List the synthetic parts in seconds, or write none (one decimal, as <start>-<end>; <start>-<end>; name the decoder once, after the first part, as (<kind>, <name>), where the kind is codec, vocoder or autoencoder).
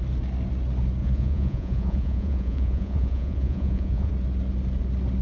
1.0-4.1 (vocoder, Vocos)